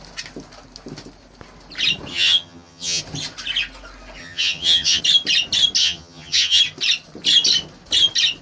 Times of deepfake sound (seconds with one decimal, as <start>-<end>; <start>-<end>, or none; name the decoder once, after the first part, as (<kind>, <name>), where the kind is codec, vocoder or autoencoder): 2.1-3.0 (vocoder, HiFi-GAN); 4.2-5.0; 5.8-6.6